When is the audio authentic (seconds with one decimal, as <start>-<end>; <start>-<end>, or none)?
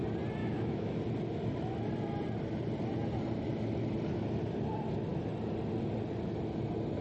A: 0.0-0.4; 1.0-7.0